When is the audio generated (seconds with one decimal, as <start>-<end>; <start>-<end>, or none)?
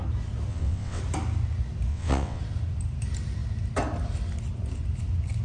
0.5-1.0; 1.9-2.4